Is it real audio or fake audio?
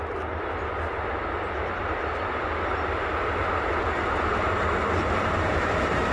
real